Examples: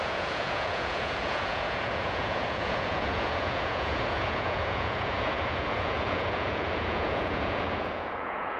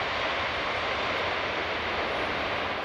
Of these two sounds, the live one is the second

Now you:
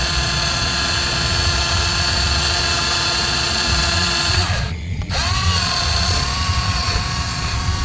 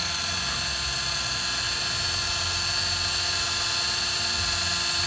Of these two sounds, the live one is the second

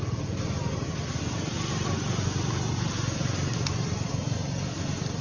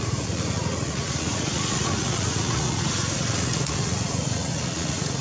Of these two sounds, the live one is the first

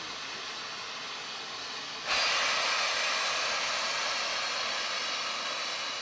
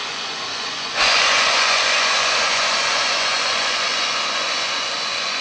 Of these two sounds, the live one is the first